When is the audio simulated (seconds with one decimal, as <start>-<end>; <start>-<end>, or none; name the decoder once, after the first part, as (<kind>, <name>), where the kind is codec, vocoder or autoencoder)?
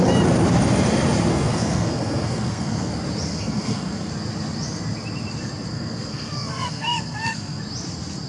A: 1.3-2.9 (codec, SNAC); 3.3-4.1; 5.7-7.6